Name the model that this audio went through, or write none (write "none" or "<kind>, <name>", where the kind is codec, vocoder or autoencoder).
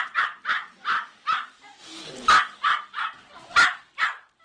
none